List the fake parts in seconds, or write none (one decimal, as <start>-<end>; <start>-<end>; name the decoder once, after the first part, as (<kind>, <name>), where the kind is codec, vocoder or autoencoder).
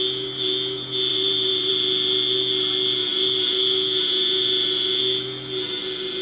1.1-1.7 (vocoder, BigVGAN v2)